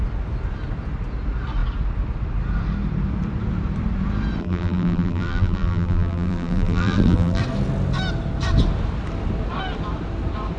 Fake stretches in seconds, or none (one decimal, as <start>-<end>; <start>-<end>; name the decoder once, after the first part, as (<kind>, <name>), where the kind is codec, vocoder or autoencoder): 4.4-7.4 (vocoder, BigVGAN v2)